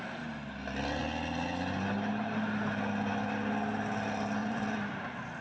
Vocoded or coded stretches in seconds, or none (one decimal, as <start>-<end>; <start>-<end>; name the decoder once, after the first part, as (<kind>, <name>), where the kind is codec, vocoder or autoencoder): 4.4-5.4 (vocoder, BigVGAN v2)